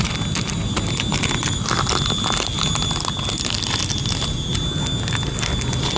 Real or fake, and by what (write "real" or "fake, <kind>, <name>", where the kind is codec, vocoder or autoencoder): real